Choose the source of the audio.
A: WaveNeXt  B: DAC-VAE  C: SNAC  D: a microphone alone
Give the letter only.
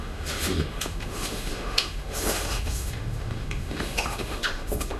B